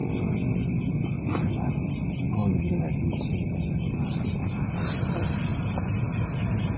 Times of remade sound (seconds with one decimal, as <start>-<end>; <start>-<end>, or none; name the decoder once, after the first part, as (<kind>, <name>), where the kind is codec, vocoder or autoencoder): 5.5-6.8 (vocoder, BigVGAN v2)